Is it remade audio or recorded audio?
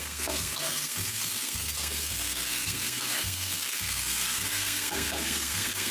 remade